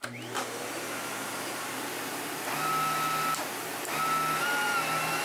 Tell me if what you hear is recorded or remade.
recorded